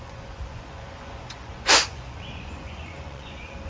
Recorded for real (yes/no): no